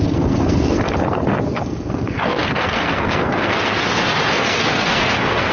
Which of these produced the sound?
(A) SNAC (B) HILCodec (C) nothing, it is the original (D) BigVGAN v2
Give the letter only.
A